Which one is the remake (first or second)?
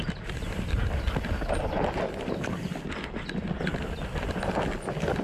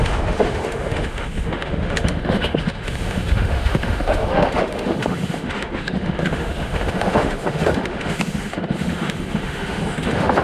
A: second